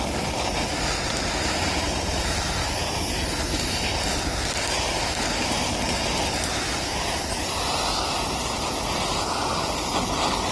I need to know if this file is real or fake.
real